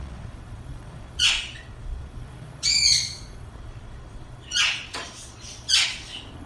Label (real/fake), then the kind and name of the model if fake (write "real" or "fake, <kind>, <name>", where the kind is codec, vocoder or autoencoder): fake, vocoder, Vocos